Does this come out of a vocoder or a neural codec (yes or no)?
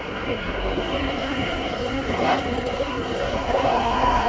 yes